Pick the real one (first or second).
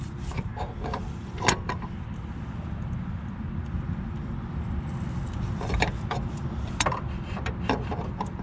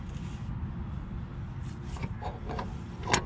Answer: second